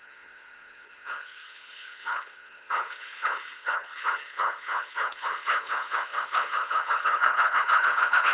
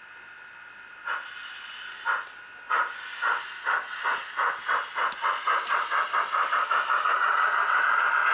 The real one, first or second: second